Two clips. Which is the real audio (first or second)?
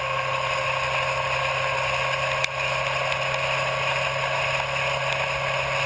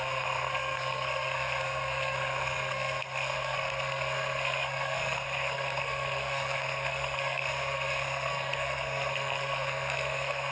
first